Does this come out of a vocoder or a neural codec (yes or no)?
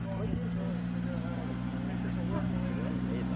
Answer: no